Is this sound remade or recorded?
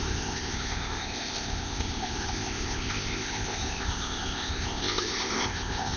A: remade